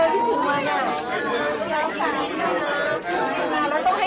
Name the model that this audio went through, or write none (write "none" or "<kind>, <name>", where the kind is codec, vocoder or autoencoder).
none